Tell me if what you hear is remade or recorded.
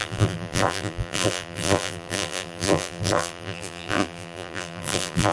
remade